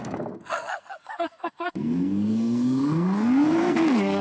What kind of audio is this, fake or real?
fake